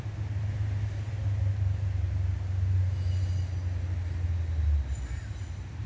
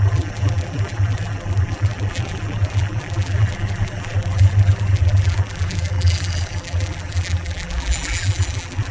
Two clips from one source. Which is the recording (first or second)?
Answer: first